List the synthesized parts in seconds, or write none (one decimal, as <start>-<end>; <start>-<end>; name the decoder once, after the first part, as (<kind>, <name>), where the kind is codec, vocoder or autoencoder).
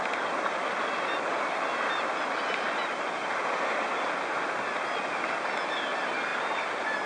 none